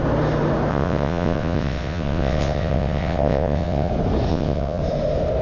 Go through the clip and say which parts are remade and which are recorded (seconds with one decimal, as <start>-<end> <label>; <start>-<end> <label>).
0.0-0.7 recorded; 0.7-3.9 remade; 3.9-4.3 recorded; 4.3-4.8 remade; 4.8-5.4 recorded